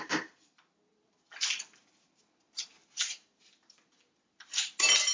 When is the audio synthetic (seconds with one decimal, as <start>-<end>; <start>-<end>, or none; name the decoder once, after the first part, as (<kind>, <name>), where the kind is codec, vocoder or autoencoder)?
none